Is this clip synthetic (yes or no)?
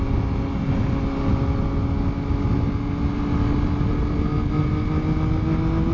no